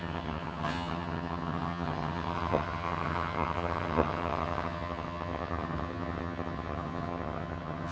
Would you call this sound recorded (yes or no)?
no